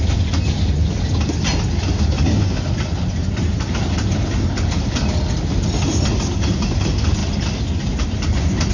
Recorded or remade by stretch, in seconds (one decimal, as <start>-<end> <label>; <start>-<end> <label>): 0.0-8.7 recorded